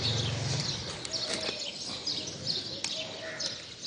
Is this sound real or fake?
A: real